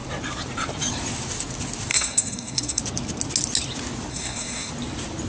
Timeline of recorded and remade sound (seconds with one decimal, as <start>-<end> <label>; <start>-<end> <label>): 0.0-1.9 recorded; 1.9-2.8 remade; 2.8-4.1 recorded; 4.1-4.7 remade; 4.7-5.3 recorded